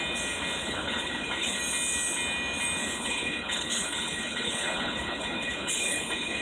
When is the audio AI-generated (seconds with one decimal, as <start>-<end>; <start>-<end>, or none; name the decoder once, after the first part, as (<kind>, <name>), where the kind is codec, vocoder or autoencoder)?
0.6-1.6 (codec, HILCodec); 2.8-6.4